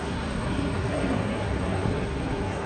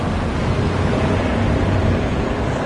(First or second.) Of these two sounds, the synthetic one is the first